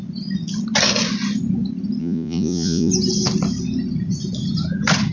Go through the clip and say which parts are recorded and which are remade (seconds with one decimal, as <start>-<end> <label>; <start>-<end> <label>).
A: 0.0-2.0 recorded; 2.0-2.9 remade; 2.9-5.1 recorded